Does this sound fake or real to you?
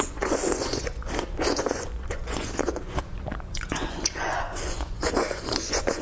fake